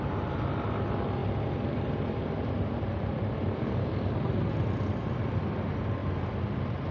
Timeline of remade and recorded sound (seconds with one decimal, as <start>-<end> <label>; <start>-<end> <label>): 0.0-1.2 recorded; 1.2-4.4 remade; 4.4-6.9 recorded